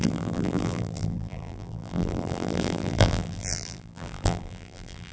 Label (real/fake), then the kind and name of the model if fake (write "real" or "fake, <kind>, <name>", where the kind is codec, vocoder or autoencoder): fake, vocoder, BigVGAN v2